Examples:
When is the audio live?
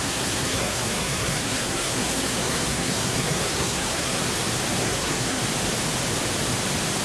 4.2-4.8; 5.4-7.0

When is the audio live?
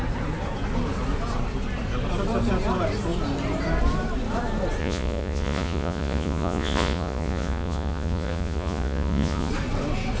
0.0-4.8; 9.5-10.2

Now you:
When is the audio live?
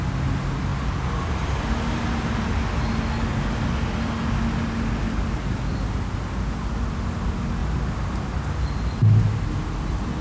0.0-0.7; 1.6-10.2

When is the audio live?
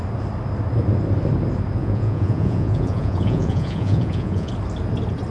0.0-1.8; 4.5-5.3